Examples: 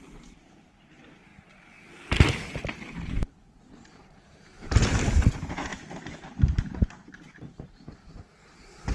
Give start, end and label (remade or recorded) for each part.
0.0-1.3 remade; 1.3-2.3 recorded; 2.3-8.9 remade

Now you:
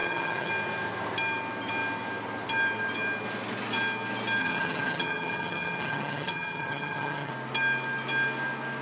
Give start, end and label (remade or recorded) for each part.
0.0-0.5 remade; 0.5-4.4 recorded; 4.4-7.3 remade; 7.3-8.8 recorded

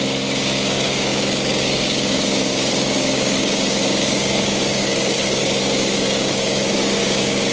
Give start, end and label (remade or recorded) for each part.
0.0-7.5 remade